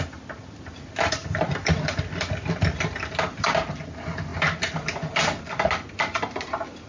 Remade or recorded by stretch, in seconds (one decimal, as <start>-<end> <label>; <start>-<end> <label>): 0.0-6.9 recorded